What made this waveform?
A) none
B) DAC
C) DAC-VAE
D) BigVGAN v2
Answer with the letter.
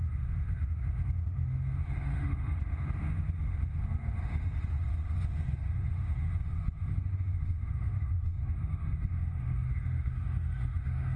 C